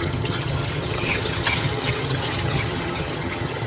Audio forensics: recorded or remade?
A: remade